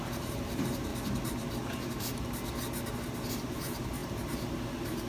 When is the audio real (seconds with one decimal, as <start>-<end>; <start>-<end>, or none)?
0.9-3.3